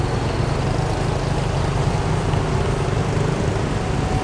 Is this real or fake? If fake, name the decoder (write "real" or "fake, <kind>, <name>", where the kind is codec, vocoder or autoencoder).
real